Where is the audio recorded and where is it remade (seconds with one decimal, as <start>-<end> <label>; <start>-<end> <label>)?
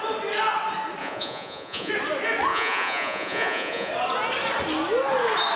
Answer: 0.0-1.0 recorded; 1.0-1.9 remade; 1.9-2.5 recorded; 2.5-3.9 remade; 3.9-5.6 recorded